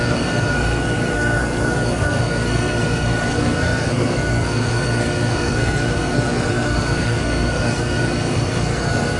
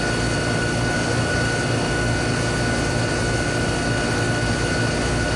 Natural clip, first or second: second